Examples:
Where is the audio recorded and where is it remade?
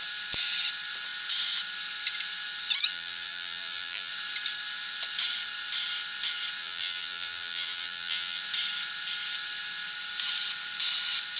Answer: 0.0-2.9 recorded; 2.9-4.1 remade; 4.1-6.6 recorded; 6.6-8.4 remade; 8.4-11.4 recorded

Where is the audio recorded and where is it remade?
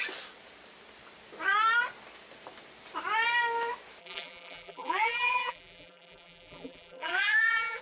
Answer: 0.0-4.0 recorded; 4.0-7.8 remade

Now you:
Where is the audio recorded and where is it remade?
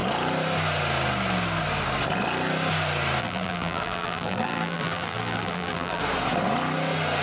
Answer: 0.0-3.2 recorded; 3.2-6.0 remade; 6.0-7.2 recorded